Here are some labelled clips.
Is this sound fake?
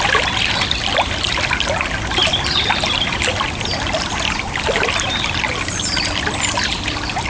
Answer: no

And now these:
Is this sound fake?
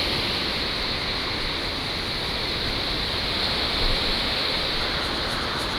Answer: no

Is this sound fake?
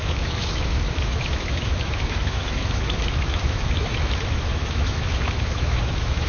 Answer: yes